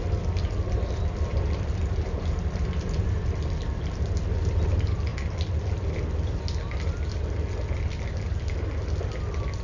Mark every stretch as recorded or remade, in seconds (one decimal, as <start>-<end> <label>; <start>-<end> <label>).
0.0-9.6 recorded